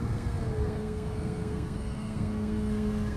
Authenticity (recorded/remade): remade